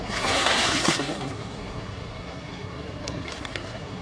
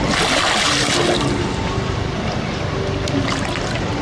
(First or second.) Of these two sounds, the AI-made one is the first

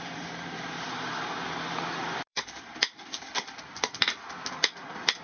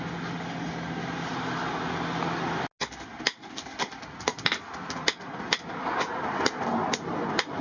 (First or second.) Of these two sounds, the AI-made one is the first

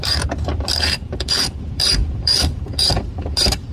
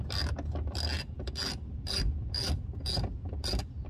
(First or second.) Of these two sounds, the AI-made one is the first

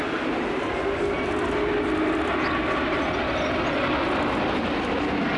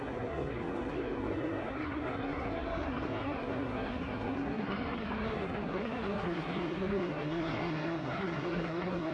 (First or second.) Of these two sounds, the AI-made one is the second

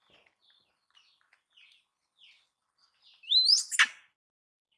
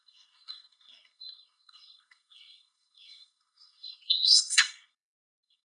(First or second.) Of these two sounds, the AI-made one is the second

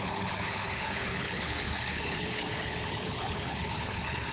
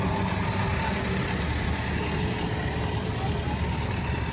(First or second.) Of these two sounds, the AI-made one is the first